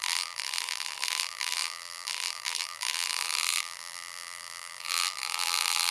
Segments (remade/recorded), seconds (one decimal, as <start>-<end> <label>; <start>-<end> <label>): 0.0-5.9 remade